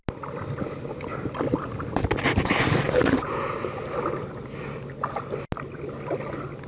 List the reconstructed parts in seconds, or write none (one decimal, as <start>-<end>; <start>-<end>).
none